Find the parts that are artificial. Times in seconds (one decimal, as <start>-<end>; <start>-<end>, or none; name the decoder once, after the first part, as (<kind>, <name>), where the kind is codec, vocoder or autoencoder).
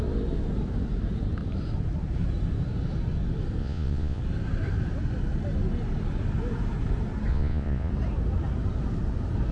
3.6-4.2 (vocoder, Vocos); 7.3-7.9